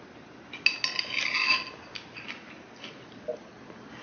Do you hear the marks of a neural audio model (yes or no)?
no